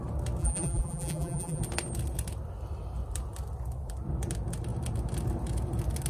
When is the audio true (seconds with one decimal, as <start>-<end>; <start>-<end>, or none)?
0.0-0.4; 1.6-6.1